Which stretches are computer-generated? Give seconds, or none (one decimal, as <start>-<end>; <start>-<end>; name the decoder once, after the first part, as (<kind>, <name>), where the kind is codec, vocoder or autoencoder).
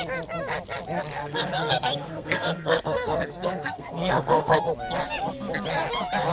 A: 1.2-4.6 (codec, SNAC)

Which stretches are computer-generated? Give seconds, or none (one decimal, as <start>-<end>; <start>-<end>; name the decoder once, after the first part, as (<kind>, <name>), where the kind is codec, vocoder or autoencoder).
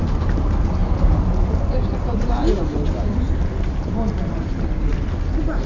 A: 0.8-3.9 (vocoder, BigVGAN v2)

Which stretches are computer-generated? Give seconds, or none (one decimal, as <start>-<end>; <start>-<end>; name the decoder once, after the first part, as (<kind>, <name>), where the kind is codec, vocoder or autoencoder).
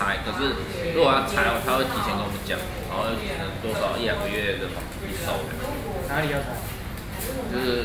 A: none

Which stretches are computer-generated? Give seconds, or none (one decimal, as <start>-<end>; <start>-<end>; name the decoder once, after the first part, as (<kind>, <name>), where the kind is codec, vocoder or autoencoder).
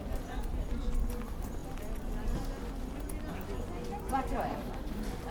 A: none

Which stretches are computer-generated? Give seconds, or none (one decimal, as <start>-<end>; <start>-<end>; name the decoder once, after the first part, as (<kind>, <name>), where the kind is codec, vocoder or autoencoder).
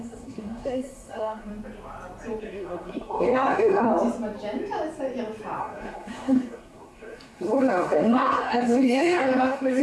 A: 0.0-1.5 (codec, SNAC); 2.4-3.9; 5.6-9.8